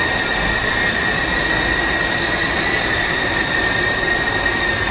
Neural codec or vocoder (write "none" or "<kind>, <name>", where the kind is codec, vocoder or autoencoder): none